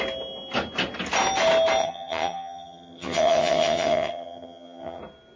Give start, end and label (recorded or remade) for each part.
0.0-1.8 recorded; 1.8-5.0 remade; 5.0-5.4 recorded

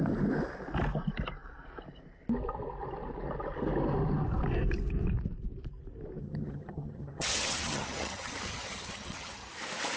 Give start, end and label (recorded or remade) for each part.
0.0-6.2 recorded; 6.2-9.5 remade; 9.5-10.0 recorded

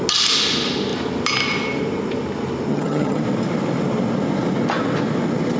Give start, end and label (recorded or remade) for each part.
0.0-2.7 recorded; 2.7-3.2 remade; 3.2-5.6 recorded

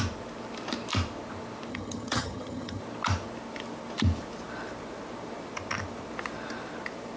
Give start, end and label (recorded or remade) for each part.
0.0-1.7 recorded; 1.7-2.8 remade; 2.8-7.2 recorded

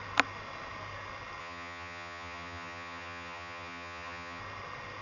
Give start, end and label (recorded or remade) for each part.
0.0-1.4 recorded; 1.4-4.4 remade; 4.4-5.0 recorded